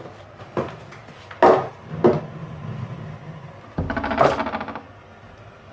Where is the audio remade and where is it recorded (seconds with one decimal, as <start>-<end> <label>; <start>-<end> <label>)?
0.0-5.7 recorded